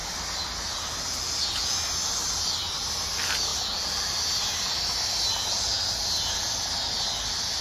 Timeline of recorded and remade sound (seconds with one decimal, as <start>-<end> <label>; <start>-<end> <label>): 0.0-7.6 recorded